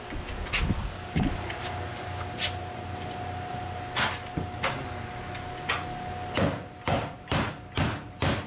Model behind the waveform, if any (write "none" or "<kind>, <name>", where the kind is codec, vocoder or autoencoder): none